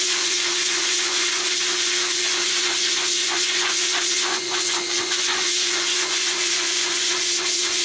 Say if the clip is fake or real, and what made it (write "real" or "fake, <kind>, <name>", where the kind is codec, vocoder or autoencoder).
fake, vocoder, Vocos